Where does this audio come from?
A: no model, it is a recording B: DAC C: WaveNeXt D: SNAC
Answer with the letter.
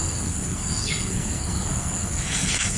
D